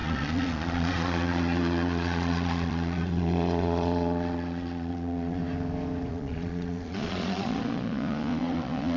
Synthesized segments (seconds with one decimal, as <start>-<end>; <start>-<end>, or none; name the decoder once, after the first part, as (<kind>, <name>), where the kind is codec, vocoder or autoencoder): 0.0-5.4 (vocoder, Vocos); 6.1-9.0